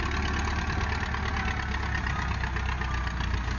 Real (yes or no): yes